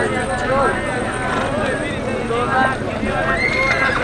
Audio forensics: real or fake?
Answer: real